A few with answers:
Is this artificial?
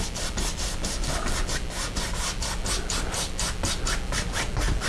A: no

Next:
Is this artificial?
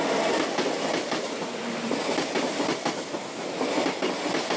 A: no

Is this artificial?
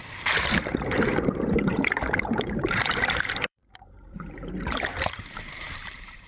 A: yes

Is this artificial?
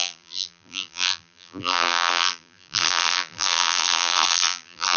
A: yes